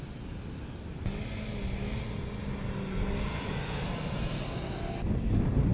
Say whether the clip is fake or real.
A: real